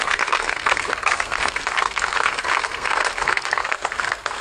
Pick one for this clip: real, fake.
fake